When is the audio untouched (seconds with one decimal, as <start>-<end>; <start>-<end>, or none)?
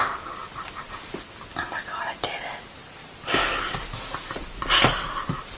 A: 0.0-5.6